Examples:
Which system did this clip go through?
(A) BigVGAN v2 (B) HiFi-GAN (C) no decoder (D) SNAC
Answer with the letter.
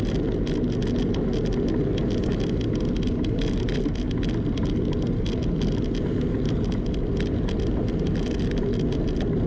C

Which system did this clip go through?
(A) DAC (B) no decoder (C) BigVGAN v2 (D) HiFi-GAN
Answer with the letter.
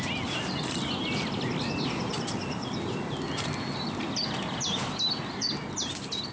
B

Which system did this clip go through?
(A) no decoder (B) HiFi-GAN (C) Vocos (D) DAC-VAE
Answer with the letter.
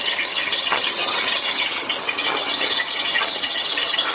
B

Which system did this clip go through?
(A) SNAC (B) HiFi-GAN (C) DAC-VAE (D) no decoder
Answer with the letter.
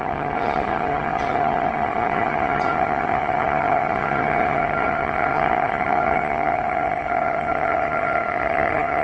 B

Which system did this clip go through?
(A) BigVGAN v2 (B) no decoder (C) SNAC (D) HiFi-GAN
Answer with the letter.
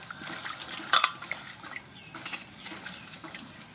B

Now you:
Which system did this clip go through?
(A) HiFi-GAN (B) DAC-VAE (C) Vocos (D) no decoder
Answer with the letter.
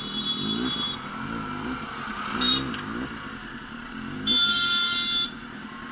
D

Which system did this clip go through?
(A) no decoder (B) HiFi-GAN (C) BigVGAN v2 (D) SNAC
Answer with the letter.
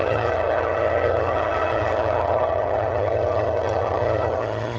B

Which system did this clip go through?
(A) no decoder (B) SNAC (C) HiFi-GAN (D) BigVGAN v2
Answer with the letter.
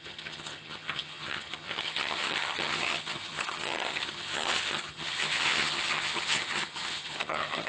C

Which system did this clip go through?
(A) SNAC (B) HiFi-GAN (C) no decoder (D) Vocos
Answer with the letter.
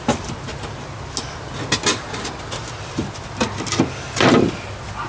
C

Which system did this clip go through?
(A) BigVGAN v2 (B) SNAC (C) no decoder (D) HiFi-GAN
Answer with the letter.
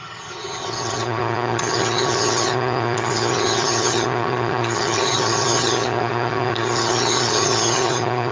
D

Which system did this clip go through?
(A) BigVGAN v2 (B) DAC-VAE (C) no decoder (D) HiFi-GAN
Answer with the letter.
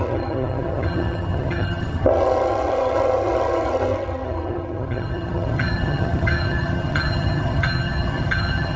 D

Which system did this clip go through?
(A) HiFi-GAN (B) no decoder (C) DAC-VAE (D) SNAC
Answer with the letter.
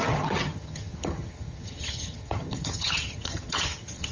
A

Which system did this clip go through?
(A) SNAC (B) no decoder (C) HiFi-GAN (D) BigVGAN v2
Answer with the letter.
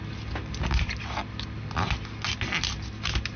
B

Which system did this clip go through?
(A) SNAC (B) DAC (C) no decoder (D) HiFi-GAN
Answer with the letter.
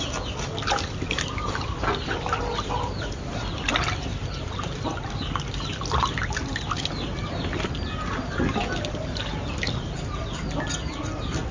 C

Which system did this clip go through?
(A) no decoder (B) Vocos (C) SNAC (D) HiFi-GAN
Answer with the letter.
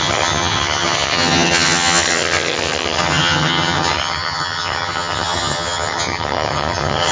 D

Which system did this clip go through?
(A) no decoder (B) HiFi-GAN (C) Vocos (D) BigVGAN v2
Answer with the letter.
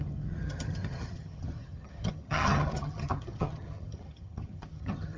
B